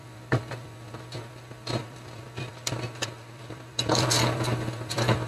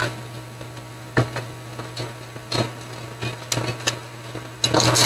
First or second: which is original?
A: second